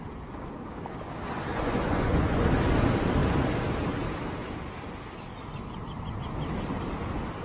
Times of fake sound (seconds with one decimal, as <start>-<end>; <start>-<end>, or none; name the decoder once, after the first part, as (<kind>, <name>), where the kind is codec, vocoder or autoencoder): 1.5-2.5 (vocoder, Vocos)